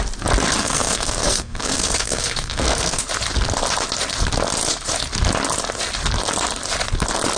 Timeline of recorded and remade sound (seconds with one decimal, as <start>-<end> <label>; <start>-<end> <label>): 0.0-0.6 recorded; 0.6-3.0 remade; 3.0-7.4 recorded